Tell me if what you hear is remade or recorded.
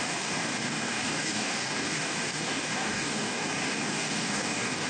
remade